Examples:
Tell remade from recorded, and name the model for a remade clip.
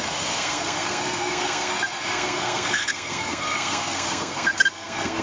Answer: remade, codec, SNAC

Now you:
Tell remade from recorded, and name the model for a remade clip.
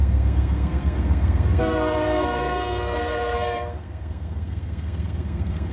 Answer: remade, codec, SNAC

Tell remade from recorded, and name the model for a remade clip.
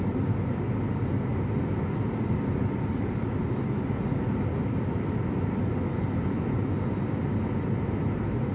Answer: recorded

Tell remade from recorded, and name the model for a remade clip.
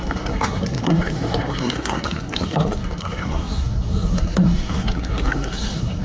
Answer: remade, codec, SNAC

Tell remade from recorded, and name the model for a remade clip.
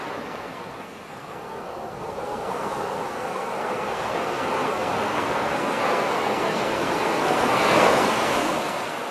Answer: remade, codec, SNAC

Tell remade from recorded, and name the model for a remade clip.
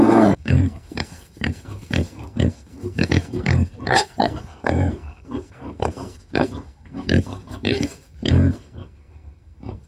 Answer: remade, codec, SNAC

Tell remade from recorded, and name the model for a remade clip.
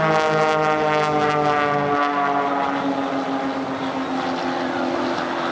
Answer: recorded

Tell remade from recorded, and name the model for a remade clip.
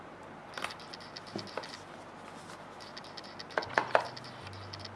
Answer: recorded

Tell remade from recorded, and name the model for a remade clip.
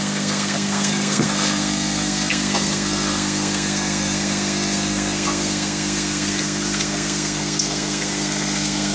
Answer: remade, codec, SNAC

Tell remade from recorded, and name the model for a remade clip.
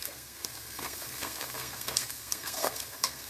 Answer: remade, codec, SNAC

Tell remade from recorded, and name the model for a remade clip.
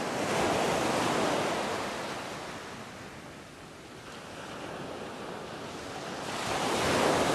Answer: recorded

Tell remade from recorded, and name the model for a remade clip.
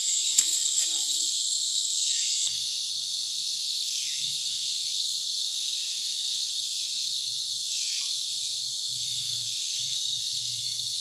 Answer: remade, codec, SNAC